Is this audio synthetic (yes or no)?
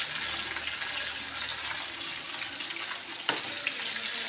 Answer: no